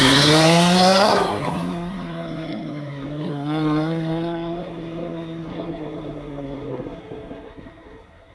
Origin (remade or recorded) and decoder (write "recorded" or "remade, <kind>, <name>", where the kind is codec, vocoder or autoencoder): remade, codec, SNAC